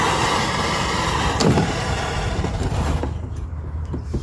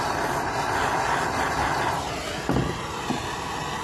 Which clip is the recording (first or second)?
second